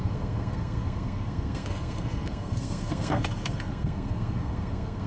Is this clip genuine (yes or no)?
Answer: no